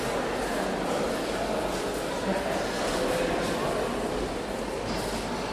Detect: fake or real real